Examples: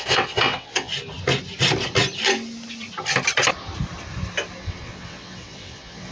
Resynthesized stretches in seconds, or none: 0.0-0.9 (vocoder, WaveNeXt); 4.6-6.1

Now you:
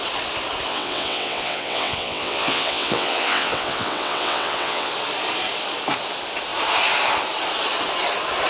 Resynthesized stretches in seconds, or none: 0.7-4.9 (vocoder, WaveNeXt)

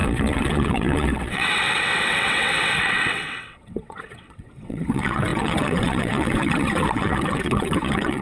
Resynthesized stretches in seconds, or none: 0.0-8.2 (vocoder, WaveNeXt)

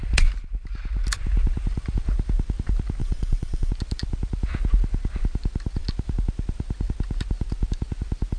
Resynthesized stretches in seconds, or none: 3.0-3.7 (vocoder, WaveNeXt)

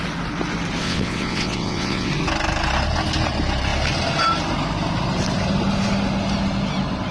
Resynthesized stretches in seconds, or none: 0.8-2.1 (vocoder, WaveNeXt)

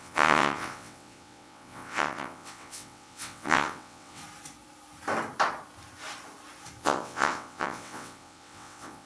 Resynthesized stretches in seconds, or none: 0.0-4.2 (vocoder, WaveNeXt); 6.8-9.1

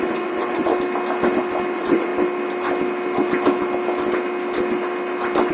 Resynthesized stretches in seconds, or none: 0.0-0.7 (vocoder, WaveNeXt); 1.7-2.1